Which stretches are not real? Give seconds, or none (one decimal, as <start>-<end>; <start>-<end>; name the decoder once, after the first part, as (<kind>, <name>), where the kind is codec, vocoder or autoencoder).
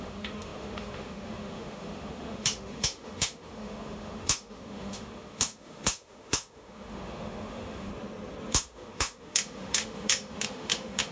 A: 0.0-7.9 (autoencoder, DAC-VAE); 8.5-11.1